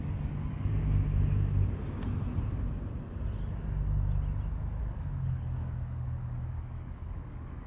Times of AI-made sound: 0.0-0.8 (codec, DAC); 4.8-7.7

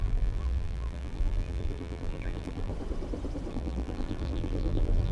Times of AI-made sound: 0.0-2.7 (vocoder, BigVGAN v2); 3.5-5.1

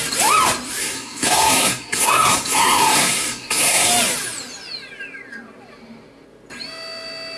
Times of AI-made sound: 0.8-3.9 (codec, SNAC)

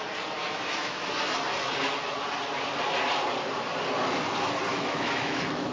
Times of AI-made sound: 0.4-1.1 (autoencoder, DAC-VAE); 4.7-5.7

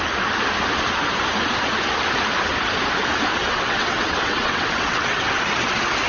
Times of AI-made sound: 3.4-5.3 (vocoder, WaveNeXt)

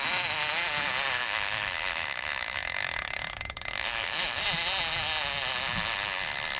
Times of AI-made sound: 1.2-4.4 (autoencoder, DAC-VAE)

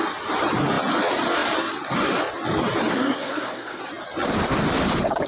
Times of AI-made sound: 2.9-3.8 (codec, SNAC)